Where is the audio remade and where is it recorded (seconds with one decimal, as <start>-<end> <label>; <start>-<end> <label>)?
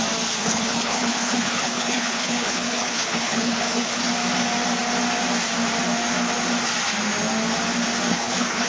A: 0.0-0.4 recorded; 0.4-4.1 remade; 4.1-8.1 recorded; 8.1-8.7 remade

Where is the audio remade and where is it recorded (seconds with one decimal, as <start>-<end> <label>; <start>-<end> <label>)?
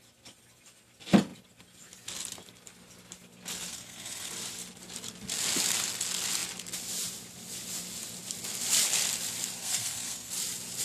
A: 0.0-3.7 recorded; 3.7-4.3 remade; 4.3-9.6 recorded; 9.6-10.3 remade; 10.3-10.8 recorded